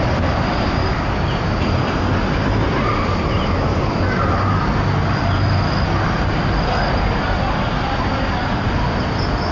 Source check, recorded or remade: recorded